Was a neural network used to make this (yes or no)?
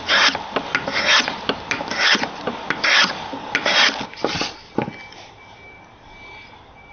no